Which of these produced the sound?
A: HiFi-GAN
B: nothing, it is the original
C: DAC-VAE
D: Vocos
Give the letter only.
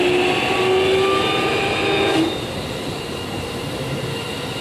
B